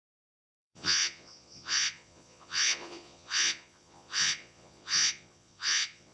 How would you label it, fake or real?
fake